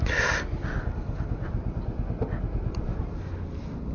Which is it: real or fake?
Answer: real